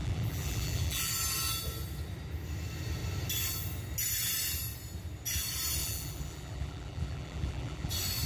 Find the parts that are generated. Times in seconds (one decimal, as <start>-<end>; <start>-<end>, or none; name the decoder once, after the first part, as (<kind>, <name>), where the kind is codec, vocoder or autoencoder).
0.0-1.1 (vocoder, BigVGAN v2); 5.8-7.9